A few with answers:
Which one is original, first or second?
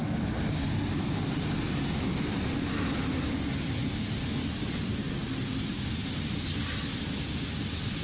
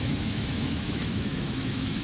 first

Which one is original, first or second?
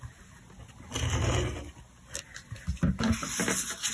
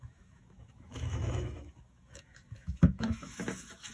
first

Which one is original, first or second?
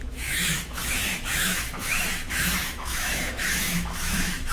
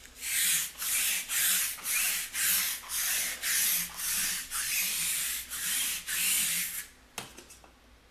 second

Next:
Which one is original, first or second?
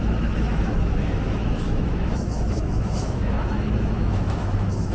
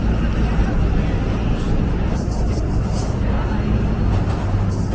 second